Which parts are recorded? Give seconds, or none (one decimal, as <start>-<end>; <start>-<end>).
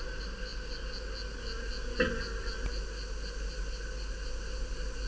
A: 0.0-5.1